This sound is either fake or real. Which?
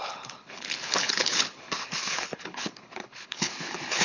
fake